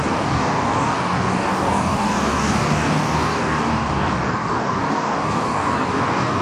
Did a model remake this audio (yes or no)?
yes